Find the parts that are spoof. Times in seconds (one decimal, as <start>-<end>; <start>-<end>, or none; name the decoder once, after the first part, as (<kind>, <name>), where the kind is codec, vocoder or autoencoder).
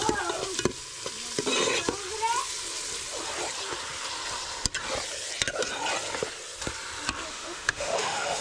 7.3-8.4 (autoencoder, DAC-VAE)